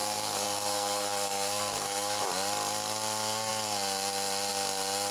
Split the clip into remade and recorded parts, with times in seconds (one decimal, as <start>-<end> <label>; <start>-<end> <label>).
0.0-2.2 remade; 2.2-5.1 recorded